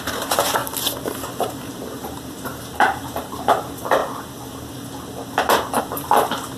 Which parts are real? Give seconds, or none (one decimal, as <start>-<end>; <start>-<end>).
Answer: 0.6-1.4; 4.0-5.8